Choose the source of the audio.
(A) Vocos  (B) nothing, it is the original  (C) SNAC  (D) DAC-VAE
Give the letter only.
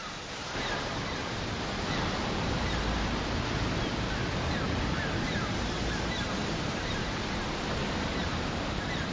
B